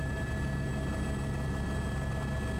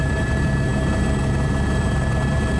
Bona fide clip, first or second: first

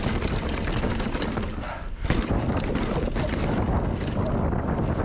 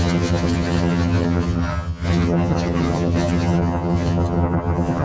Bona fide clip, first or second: first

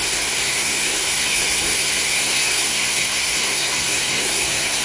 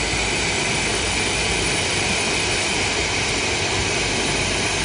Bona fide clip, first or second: second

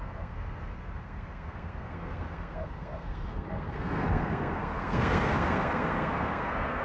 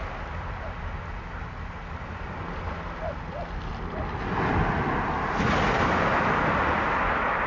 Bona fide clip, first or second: second